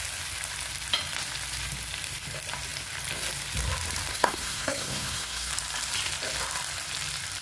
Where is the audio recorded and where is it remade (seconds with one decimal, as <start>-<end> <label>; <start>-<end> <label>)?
0.0-4.1 recorded; 4.1-5.5 remade; 5.5-7.4 recorded